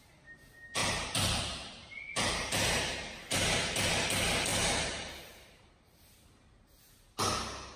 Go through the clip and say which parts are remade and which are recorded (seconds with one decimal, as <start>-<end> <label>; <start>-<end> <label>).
0.0-0.8 recorded; 0.8-3.9 remade; 3.9-4.5 recorded; 4.5-5.7 remade; 5.7-7.8 recorded